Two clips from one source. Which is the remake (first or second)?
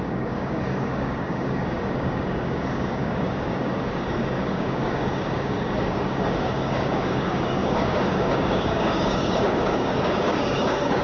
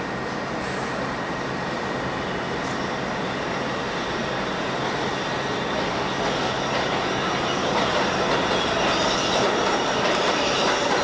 first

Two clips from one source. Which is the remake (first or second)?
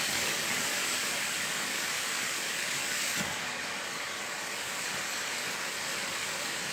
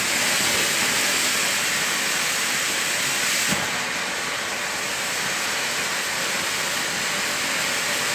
first